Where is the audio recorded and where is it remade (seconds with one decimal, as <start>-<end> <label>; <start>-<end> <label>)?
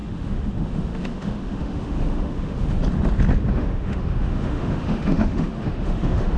0.0-2.8 remade; 2.8-3.5 recorded; 3.5-6.4 remade